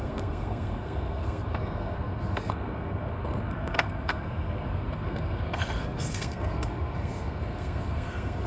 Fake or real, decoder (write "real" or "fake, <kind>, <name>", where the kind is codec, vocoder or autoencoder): fake, codec, SNAC